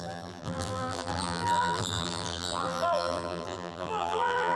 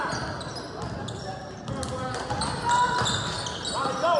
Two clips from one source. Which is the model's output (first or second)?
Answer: first